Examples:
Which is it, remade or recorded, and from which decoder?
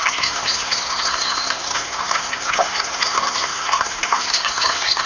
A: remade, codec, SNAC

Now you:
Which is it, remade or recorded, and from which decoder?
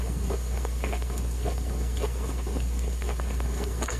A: remade, codec, SNAC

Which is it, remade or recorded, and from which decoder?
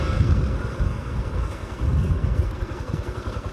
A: remade, codec, SNAC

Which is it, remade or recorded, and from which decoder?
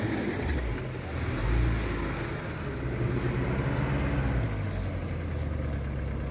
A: recorded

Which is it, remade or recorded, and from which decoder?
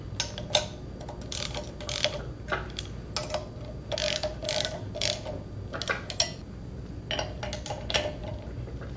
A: recorded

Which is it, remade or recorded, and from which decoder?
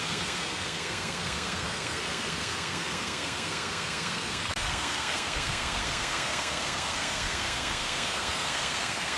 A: remade, codec, SNAC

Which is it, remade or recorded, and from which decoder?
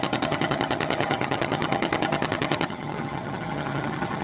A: remade, vocoder, HiFi-GAN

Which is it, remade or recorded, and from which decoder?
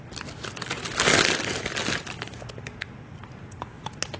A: recorded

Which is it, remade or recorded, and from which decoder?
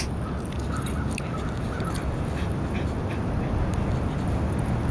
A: recorded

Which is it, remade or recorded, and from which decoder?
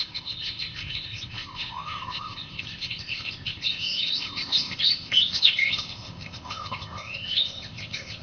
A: remade, codec, ZipCodec